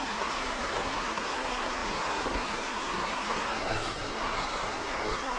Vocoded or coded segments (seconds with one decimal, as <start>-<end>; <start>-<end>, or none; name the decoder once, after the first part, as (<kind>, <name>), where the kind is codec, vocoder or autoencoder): 0.0-5.4 (codec, SNAC)